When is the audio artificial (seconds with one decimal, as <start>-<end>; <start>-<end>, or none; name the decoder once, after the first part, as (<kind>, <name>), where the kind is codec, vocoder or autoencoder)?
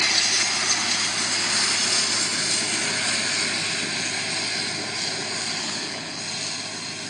5.6-6.2 (codec, HILCodec)